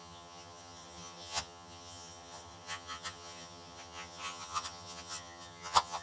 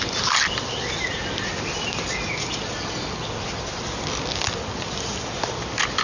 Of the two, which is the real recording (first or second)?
second